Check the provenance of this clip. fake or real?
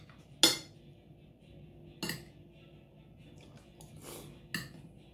real